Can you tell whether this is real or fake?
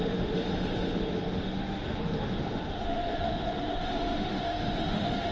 fake